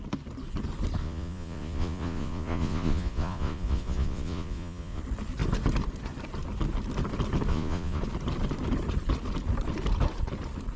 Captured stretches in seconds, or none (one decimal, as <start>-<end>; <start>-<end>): 0.0-1.0; 5.0-7.5; 8.0-10.8